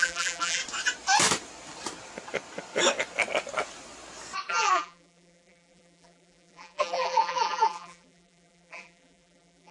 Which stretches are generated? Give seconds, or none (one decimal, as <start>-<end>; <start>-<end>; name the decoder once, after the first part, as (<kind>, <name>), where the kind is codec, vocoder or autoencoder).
0.0-0.6 (vocoder, BigVGAN v2); 4.5-9.7